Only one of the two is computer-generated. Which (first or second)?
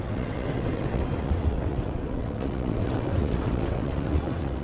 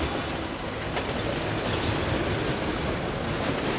first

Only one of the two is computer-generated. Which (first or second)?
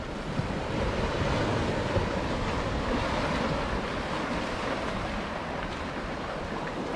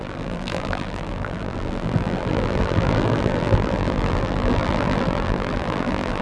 second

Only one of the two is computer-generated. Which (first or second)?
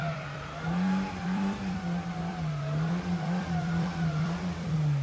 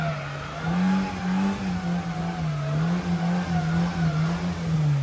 first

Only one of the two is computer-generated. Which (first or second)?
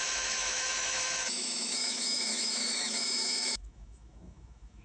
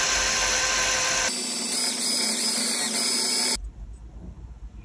first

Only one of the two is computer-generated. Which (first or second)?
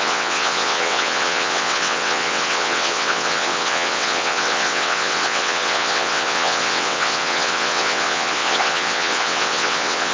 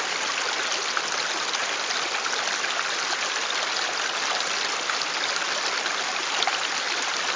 first